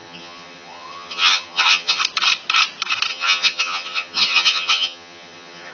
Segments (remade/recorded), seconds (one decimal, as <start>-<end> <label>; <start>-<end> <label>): 0.0-2.0 remade; 2.0-3.1 recorded; 3.1-5.7 remade